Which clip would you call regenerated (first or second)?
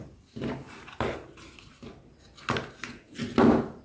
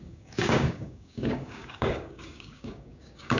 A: second